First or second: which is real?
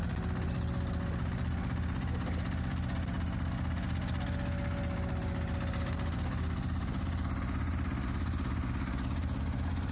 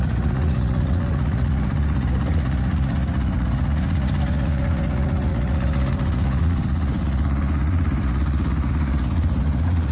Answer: first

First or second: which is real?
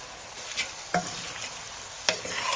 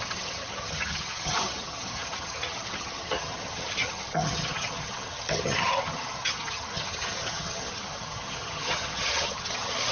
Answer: first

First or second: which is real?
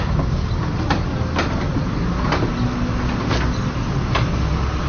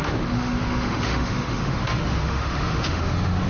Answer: first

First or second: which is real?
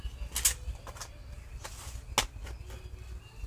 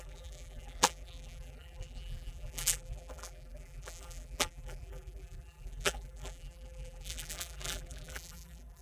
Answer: first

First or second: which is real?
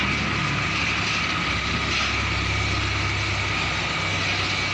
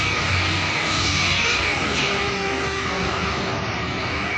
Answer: first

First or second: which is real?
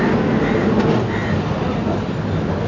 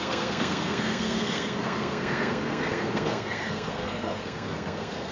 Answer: first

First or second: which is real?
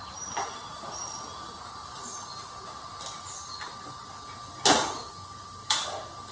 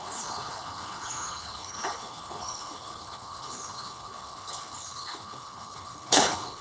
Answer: first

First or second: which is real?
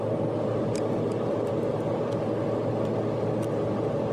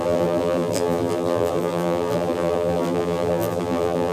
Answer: first